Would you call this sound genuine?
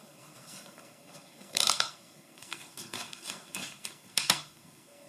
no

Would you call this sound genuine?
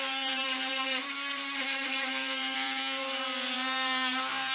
no